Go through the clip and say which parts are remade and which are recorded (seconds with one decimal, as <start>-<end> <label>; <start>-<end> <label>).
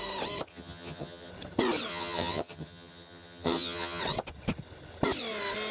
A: 0.0-0.5 recorded; 0.5-1.3 remade; 1.3-1.9 recorded; 1.9-4.0 remade; 4.0-5.7 recorded